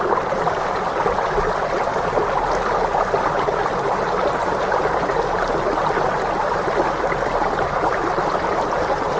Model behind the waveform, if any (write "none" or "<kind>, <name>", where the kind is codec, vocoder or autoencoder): none